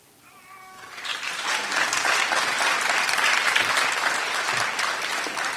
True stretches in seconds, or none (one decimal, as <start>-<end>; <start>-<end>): 0.0-1.1; 4.5-5.6